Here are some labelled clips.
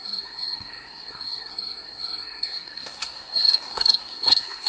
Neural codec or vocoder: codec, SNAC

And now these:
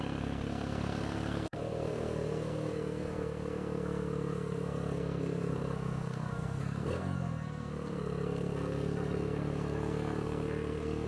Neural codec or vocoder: codec, SNAC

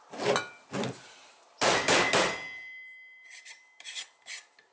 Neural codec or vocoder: none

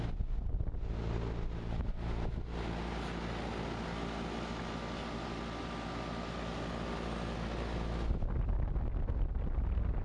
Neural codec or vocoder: none